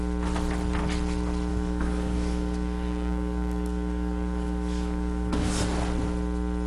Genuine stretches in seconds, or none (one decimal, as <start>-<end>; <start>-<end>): 0.0-1.5; 5.5-6.7